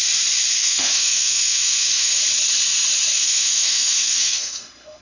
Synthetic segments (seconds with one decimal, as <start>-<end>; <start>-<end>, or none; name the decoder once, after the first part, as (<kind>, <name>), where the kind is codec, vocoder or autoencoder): 0.6-2.2 (autoencoder, DAC-VAE); 3.2-5.0